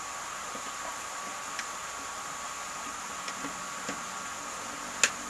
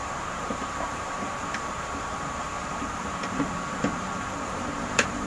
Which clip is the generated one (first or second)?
second